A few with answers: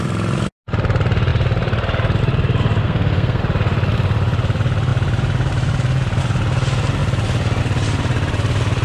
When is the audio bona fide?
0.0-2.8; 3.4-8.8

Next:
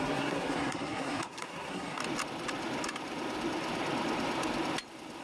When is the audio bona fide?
2.0-5.2

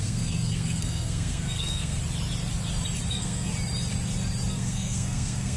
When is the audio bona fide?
2.0-3.1; 3.5-4.5

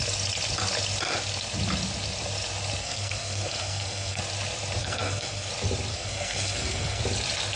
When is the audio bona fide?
0.0-2.8; 4.2-4.8; 5.5-5.9; 7.0-7.6

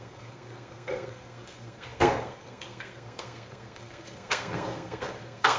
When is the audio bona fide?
none

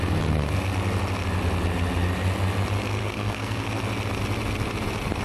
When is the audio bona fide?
0.0-3.0; 3.7-5.2

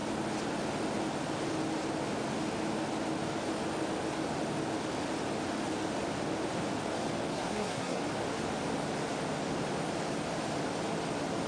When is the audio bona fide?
0.0-7.3; 8.0-11.5